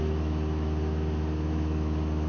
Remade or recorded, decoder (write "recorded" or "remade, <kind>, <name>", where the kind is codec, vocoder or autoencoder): remade, autoencoder, DAC-VAE